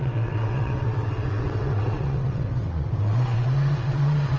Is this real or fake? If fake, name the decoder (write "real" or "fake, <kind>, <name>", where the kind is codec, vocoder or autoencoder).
fake, vocoder, WaveNeXt